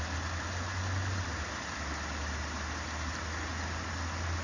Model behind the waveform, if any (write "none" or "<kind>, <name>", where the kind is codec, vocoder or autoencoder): none